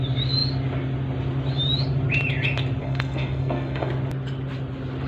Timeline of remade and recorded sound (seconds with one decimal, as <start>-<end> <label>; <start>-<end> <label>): 0.0-2.8 recorded; 2.8-3.9 remade; 3.9-5.1 recorded